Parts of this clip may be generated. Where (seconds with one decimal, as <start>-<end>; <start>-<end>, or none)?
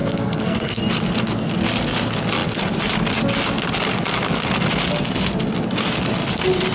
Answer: 0.0-0.8